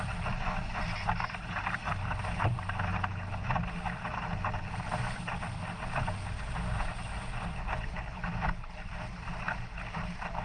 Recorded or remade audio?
recorded